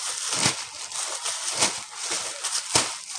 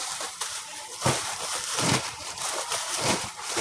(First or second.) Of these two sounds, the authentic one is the first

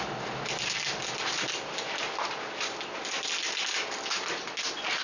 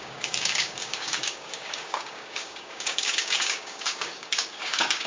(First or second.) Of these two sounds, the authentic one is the first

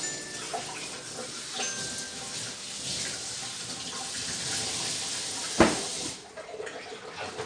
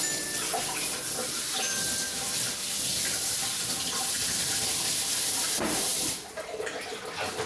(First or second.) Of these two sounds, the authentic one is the first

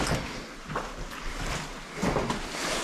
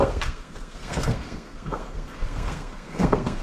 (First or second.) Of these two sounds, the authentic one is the first